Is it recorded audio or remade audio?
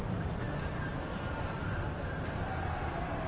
recorded